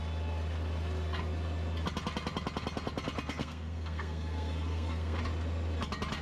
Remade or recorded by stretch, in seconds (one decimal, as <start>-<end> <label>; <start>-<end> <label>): 0.0-3.4 recorded; 3.4-5.2 remade; 5.2-6.2 recorded